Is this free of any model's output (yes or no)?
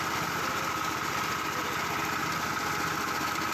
yes